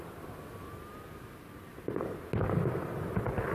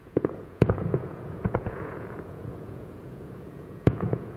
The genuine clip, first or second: first